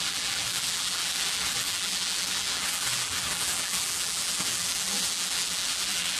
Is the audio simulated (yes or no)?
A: yes